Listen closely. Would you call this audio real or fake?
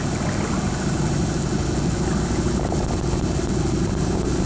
real